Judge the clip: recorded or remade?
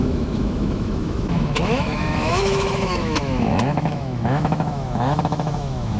remade